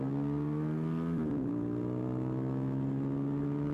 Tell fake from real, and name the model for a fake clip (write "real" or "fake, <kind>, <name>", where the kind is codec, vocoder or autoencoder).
real